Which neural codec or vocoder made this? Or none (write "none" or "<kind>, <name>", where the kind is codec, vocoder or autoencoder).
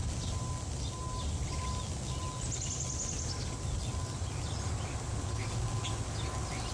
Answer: none